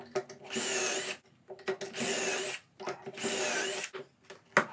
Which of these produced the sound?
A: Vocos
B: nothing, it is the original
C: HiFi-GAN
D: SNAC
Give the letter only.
B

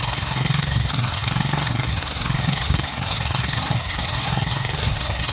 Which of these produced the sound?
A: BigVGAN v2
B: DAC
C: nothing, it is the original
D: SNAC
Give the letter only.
D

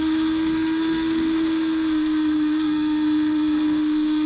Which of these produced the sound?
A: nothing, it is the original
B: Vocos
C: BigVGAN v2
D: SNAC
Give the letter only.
D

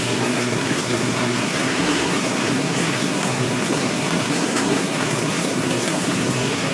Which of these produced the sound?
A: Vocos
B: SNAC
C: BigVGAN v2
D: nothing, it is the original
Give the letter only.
B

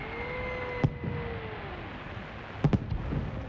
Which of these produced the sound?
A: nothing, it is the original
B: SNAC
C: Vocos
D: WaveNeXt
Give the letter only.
A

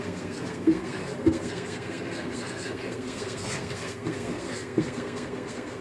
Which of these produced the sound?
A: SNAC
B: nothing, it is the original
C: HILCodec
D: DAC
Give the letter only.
A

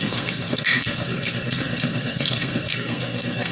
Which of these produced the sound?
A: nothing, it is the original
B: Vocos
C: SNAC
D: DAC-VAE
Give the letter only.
C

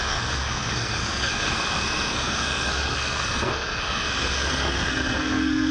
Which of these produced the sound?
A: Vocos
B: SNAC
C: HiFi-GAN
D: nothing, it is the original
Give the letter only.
B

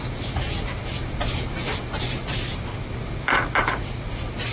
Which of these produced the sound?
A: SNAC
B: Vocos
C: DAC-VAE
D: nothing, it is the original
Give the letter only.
D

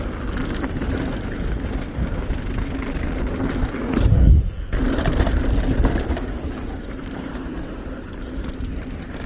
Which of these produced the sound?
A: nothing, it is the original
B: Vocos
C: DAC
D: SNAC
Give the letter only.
A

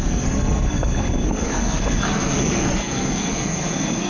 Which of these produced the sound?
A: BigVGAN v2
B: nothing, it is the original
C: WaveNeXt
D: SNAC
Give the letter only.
D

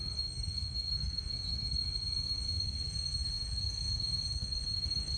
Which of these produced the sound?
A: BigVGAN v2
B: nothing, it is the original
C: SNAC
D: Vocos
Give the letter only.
C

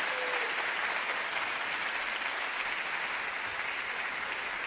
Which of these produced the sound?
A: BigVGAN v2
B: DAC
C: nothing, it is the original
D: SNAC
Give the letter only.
C